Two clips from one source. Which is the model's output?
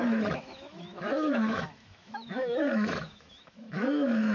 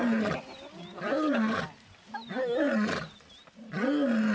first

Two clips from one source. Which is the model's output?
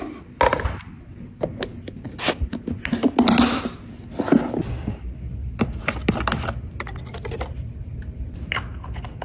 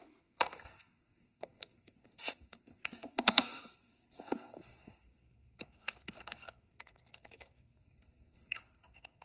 second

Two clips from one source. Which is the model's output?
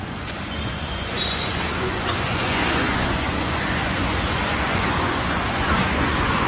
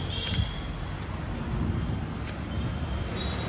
first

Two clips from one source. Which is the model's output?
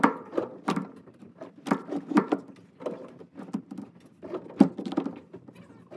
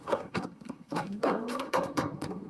second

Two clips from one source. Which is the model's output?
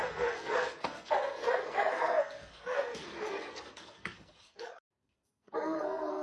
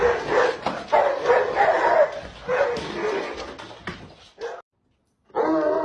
first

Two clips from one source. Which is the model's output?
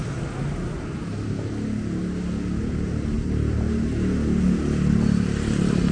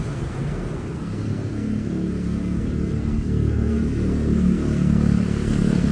second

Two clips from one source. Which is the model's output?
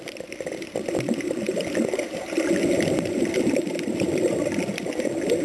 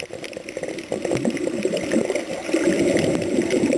first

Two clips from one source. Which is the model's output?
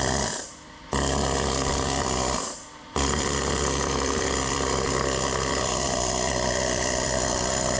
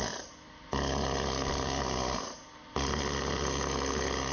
first